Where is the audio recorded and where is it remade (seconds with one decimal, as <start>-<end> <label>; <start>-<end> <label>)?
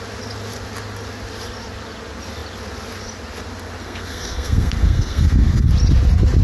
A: 0.0-3.8 recorded; 3.8-5.7 remade; 5.7-6.4 recorded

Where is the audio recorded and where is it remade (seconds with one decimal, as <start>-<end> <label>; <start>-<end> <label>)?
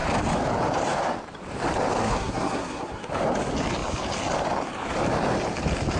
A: 0.0-2.0 recorded; 2.0-3.1 remade; 3.1-6.0 recorded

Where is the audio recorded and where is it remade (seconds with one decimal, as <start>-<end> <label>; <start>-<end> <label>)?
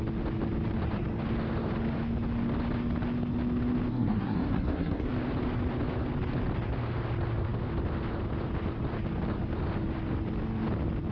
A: 0.0-3.9 recorded; 3.9-5.1 remade; 5.1-11.1 recorded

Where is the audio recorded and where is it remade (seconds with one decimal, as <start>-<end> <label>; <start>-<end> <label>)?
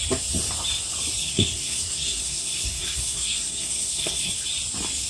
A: 0.0-1.2 recorded; 1.2-4.3 remade; 4.3-5.1 recorded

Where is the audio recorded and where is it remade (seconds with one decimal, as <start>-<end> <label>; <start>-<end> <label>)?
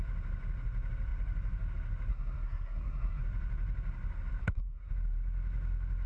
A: 0.0-2.1 recorded; 2.1-3.2 remade; 3.2-4.4 recorded; 4.4-4.9 remade; 4.9-6.1 recorded